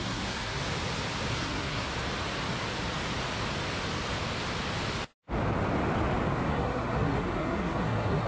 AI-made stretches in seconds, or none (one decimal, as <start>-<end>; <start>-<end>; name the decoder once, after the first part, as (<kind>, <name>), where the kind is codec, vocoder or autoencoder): 0.0-0.6 (codec, SNAC); 1.3-1.9; 6.5-8.3